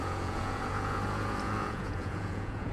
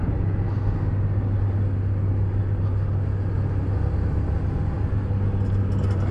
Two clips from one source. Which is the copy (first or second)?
first